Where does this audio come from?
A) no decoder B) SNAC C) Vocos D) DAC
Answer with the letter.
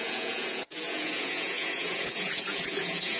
C